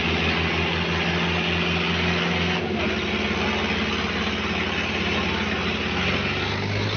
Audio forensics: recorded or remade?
recorded